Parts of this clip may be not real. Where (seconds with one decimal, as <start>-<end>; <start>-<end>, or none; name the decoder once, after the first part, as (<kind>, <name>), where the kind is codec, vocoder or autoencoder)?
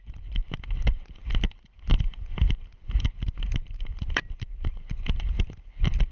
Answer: none